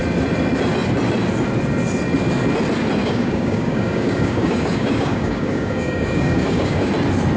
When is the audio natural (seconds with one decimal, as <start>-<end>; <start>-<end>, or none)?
0.0-3.0; 6.9-7.4